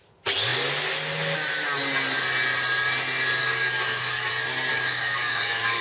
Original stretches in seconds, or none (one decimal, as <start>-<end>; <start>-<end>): 0.0-3.4; 4.3-4.7